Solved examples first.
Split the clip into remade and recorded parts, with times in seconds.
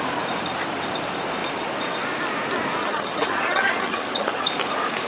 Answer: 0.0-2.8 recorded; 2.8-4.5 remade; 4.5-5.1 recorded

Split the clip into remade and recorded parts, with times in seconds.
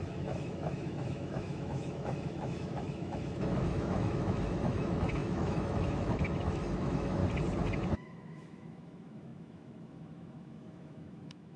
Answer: 0.0-7.2 remade; 7.2-7.9 recorded; 7.9-11.6 remade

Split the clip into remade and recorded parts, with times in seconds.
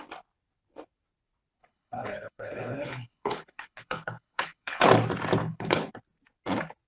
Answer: 0.0-1.6 recorded; 1.6-4.9 remade; 4.9-5.4 recorded; 5.4-5.9 remade; 5.9-6.9 recorded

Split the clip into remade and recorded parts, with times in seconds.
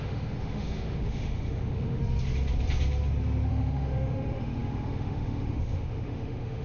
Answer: 0.0-2.0 remade; 2.0-3.5 recorded; 3.5-6.6 remade